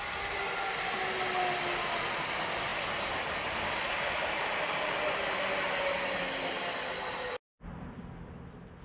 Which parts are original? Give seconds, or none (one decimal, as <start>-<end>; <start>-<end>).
0.0-8.8